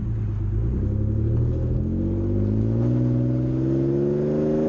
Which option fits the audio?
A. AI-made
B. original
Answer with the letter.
B